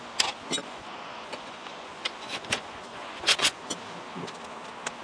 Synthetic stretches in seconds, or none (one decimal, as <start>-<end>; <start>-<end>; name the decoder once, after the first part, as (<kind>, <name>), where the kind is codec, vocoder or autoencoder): 0.6-3.6 (vocoder, Vocos)